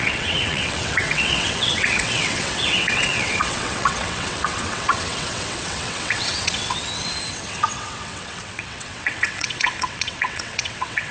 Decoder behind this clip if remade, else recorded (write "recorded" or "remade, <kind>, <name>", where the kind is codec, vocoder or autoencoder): remade, vocoder, WaveNeXt